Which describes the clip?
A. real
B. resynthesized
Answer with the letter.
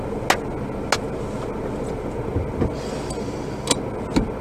A